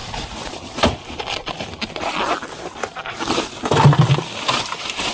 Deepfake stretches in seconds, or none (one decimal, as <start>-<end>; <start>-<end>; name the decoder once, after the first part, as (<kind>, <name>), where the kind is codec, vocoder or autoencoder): none